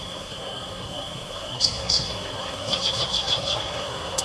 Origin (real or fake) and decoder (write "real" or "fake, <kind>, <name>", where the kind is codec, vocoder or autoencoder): fake, codec, SNAC